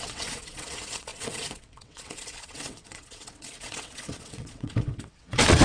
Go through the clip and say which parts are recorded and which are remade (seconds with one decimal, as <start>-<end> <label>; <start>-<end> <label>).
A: 0.0-5.6 remade